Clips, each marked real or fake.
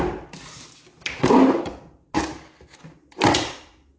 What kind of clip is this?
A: real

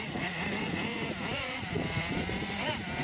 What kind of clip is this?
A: fake